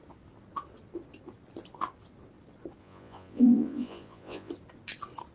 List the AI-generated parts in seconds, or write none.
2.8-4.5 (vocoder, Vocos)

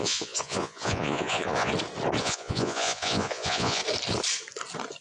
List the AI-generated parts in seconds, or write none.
0.0-1.7 (vocoder, Vocos); 2.2-3.8

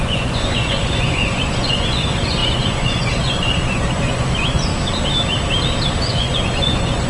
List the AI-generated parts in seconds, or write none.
0.0-4.7 (vocoder, Vocos); 6.0-7.1